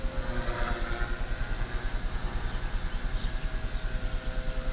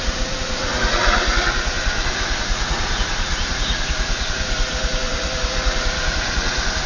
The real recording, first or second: first